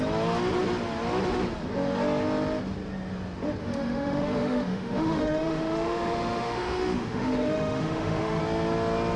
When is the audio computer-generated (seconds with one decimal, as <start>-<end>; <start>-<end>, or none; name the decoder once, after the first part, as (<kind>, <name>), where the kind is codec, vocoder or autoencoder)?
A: 3.6-8.4 (autoencoder, DAC-VAE)